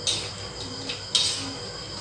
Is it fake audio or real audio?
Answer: real